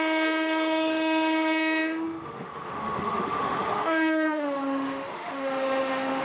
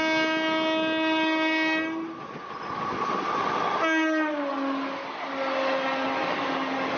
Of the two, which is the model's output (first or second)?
first